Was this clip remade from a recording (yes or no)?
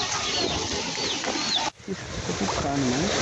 no